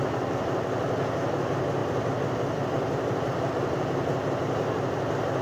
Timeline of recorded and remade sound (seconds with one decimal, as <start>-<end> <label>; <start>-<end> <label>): 0.0-1.8 recorded; 1.8-3.5 remade; 3.5-5.4 recorded